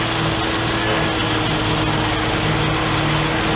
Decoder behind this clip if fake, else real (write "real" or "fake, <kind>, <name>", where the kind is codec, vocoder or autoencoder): real